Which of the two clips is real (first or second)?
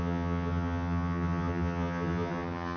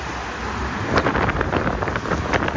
second